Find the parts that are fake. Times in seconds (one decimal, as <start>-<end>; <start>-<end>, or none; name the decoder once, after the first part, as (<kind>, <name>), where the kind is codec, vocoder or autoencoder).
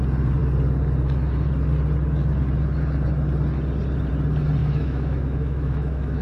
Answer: 4.6-6.2 (autoencoder, DAC-VAE)